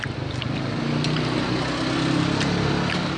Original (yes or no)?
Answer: yes